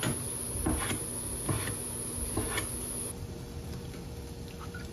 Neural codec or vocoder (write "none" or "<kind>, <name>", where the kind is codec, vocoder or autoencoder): none